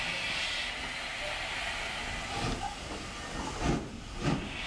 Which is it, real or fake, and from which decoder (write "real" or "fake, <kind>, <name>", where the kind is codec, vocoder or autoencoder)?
real